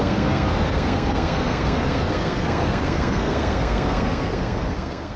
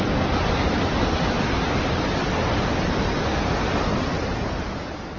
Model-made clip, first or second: first